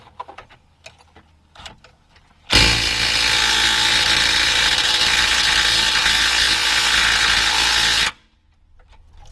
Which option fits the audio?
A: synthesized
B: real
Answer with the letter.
B